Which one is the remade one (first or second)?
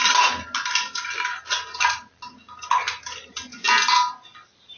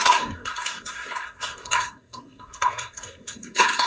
second